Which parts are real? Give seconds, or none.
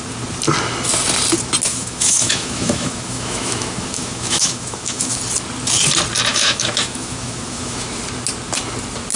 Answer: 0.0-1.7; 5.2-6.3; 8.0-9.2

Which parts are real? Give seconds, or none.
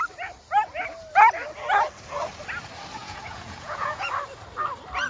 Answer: 0.0-3.0; 4.1-5.1